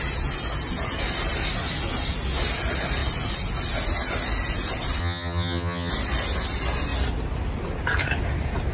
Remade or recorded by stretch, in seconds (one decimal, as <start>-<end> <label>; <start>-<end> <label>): 0.0-5.0 recorded; 5.0-5.9 remade; 5.9-8.7 recorded